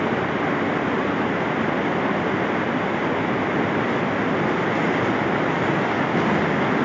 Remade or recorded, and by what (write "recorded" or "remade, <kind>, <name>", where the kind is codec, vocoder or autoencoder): recorded